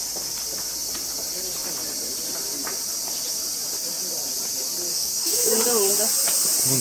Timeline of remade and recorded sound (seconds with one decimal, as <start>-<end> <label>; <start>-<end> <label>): 0.0-4.9 recorded; 4.9-5.5 remade; 5.5-6.8 recorded